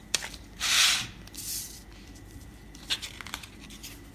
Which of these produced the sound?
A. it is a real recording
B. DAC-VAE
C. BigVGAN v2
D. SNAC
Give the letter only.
C